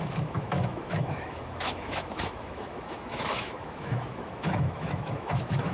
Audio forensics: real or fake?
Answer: fake